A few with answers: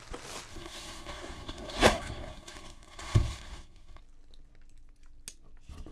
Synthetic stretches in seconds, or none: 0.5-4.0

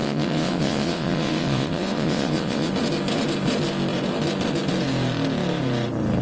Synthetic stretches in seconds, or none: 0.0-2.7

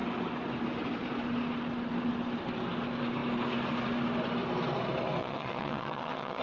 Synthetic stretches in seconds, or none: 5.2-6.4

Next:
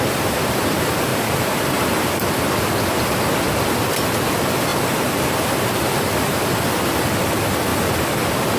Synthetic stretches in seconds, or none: 0.0-1.1; 3.5-7.7